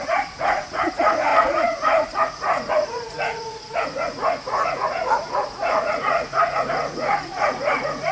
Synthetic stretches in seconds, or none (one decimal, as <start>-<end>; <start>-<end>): 0.0-8.1